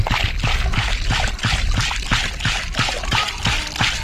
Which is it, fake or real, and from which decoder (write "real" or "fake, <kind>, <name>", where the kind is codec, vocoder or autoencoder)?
real